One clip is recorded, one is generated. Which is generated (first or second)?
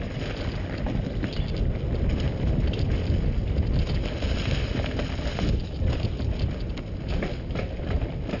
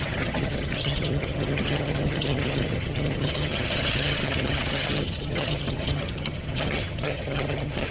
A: second